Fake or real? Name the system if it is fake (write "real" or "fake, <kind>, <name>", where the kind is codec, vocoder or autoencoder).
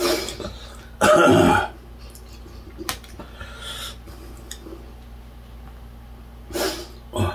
real